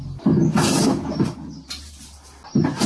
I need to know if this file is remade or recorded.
recorded